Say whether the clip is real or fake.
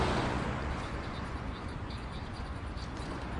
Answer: fake